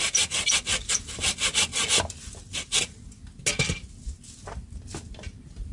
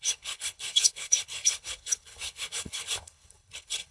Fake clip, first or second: second